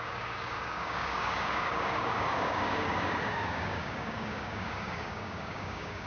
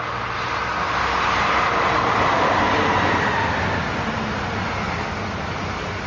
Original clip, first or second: second